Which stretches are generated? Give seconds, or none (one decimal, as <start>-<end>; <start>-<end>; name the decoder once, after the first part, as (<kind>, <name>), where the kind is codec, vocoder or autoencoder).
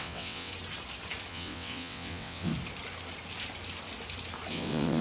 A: 0.0-0.5 (vocoder, WaveNeXt); 1.3-2.5; 4.5-5.0